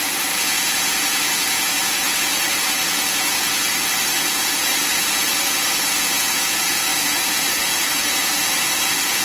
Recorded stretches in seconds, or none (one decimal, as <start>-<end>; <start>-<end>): none